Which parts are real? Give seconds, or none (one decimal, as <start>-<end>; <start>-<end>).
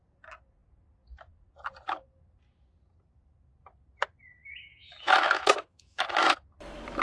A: 0.0-4.4; 6.4-7.0